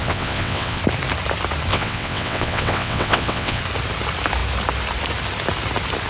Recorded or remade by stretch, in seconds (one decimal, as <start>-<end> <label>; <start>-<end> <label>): 0.0-0.8 remade; 0.8-1.7 recorded; 1.7-3.6 remade; 3.6-6.1 recorded